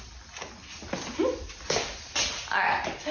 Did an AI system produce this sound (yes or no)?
no